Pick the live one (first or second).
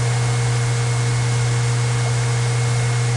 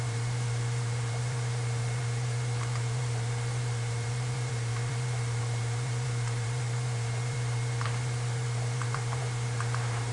first